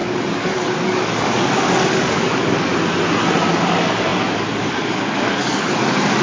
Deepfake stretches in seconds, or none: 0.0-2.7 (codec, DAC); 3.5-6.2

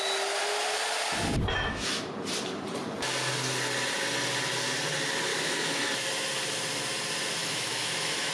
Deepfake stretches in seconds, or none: 1.5-2.0 (autoencoder, DAC-VAE); 5.3-5.9; 7.4-8.3

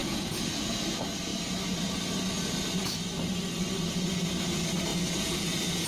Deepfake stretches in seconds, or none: 0.0-0.8 (vocoder, Vocos); 4.9-5.9

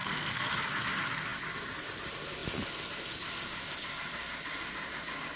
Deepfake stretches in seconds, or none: 0.0-0.5 (codec, SNAC)